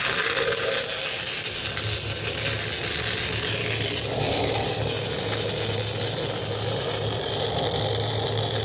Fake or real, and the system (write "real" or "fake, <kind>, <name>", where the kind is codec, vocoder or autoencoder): real